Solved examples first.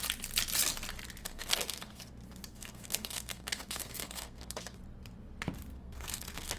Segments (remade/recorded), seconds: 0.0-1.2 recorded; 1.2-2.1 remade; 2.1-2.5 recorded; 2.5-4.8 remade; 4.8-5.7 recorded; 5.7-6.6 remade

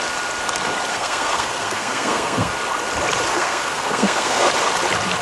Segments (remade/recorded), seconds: 0.0-0.9 recorded; 0.9-2.5 remade; 2.5-3.3 recorded; 3.3-4.5 remade; 4.5-5.2 recorded

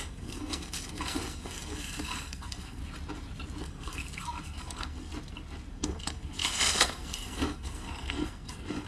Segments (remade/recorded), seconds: 0.0-2.8 remade; 2.8-3.6 recorded; 3.6-5.1 remade; 5.1-5.7 recorded; 5.7-8.9 remade

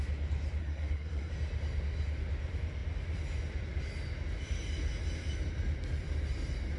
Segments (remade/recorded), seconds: 0.0-0.6 recorded; 0.6-1.3 remade; 1.3-6.8 recorded

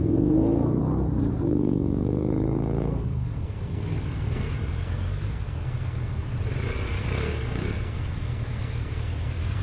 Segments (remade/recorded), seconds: 0.0-0.8 remade; 0.8-1.3 recorded; 1.3-6.3 remade; 6.3-7.0 recorded; 7.0-9.6 remade